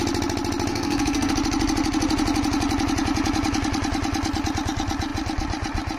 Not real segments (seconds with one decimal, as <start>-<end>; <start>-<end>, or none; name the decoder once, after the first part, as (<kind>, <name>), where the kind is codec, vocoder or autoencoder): 0.7-1.3 (codec, SNAC)